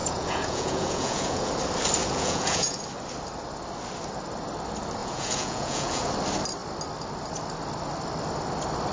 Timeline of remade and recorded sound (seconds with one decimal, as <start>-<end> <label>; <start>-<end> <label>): 0.0-1.5 remade; 1.5-2.0 recorded; 2.0-2.8 remade; 2.8-5.0 recorded; 5.0-6.1 remade; 6.1-8.9 recorded